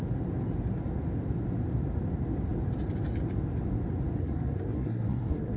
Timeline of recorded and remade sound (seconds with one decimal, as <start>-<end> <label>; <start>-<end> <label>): 0.0-4.2 recorded; 4.2-5.6 remade